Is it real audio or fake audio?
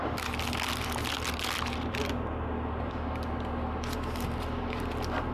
real